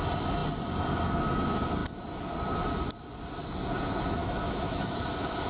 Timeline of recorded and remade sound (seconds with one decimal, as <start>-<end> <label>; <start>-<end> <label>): 0.0-4.2 recorded; 4.2-5.0 remade; 5.0-5.5 recorded